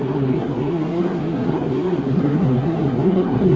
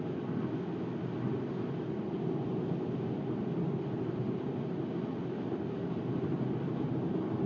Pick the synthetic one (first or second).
first